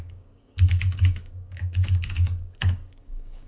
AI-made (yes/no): yes